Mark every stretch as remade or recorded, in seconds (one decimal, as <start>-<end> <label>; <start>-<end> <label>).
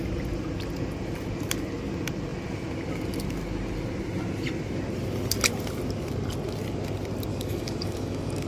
0.0-7.3 recorded; 7.3-8.5 remade